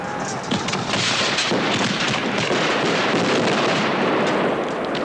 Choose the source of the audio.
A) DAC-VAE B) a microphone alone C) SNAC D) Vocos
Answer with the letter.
B